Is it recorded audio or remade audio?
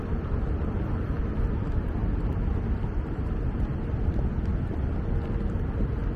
recorded